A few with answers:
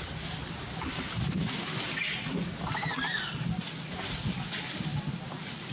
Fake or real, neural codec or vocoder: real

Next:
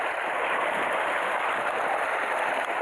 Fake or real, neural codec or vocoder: real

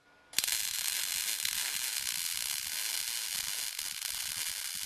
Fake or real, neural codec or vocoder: real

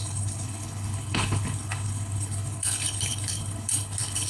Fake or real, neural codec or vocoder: fake, codec, HILCodec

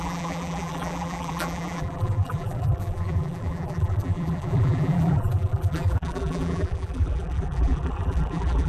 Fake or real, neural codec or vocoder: fake, vocoder, BigVGAN v2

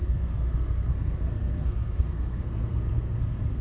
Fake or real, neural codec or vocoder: fake, codec, SNAC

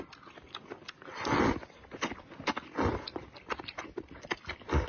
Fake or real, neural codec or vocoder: real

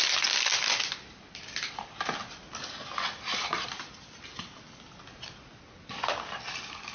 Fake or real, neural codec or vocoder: real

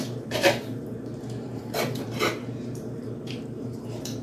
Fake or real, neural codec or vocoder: fake, vocoder, BigVGAN v2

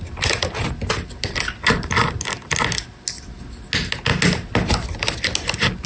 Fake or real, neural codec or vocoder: real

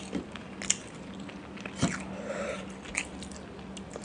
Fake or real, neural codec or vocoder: real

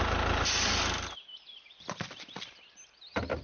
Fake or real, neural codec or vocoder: real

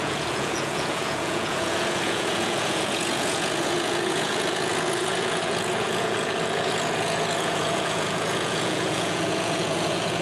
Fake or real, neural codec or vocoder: fake, vocoder, Vocos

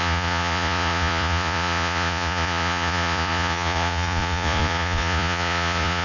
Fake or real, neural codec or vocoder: fake, vocoder, Vocos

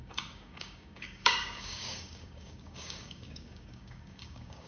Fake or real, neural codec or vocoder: fake, codec, DAC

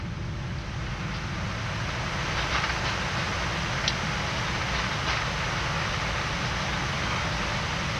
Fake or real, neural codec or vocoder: real